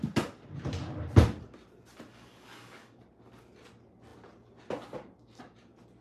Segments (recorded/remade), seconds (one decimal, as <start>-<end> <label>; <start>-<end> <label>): 0.0-2.1 recorded; 2.1-3.0 remade; 3.0-6.0 recorded